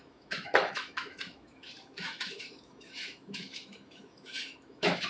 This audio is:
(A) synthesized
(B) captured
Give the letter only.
A